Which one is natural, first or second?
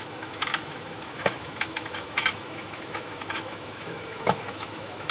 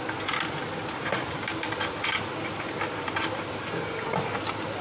second